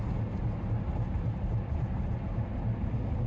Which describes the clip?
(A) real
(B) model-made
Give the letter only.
A